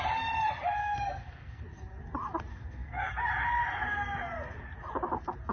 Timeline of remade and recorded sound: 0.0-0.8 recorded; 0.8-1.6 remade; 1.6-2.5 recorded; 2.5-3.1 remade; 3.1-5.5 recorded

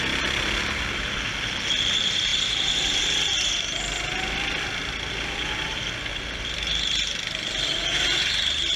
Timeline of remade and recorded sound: 0.0-8.8 recorded

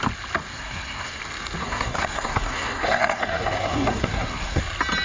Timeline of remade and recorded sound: 0.0-0.5 recorded; 0.5-1.2 remade; 1.2-1.6 recorded; 1.6-4.6 remade; 4.6-5.0 recorded

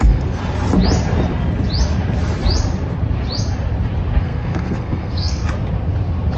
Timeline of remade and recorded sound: 0.0-0.4 remade; 0.4-4.2 recorded; 4.2-5.4 remade; 5.4-6.4 recorded

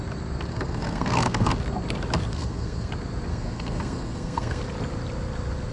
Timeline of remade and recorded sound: 0.0-0.5 recorded; 0.5-1.5 remade; 1.5-2.3 recorded; 2.3-2.9 remade; 2.9-3.3 recorded; 3.3-4.6 remade; 4.6-5.7 recorded

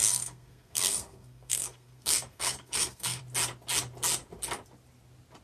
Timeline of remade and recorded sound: 0.0-3.2 remade; 3.2-5.4 recorded